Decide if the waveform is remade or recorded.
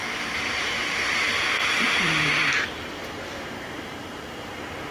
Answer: remade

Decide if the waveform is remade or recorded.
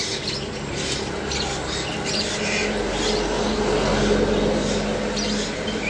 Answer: recorded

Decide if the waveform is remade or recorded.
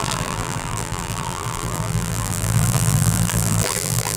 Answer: remade